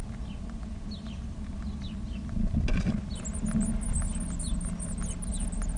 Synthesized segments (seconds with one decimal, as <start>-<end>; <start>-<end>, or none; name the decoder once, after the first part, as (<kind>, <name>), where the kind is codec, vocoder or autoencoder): none